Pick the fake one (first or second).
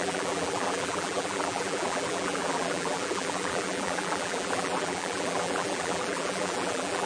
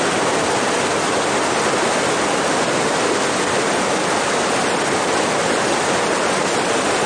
first